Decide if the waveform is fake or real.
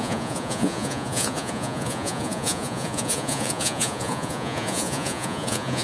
fake